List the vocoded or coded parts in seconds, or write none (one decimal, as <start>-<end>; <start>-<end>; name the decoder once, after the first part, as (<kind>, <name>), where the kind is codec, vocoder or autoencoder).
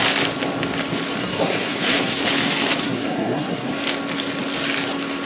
1.2-2.2 (codec, SNAC); 2.8-3.7